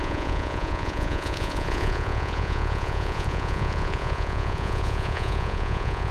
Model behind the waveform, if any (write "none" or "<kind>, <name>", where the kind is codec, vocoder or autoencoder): vocoder, Vocos